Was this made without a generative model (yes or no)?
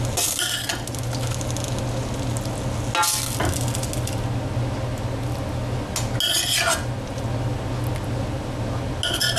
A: yes